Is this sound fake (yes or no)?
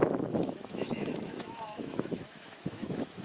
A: yes